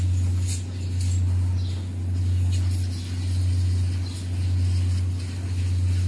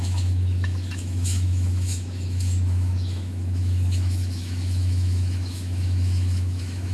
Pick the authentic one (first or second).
first